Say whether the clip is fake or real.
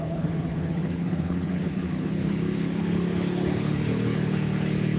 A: fake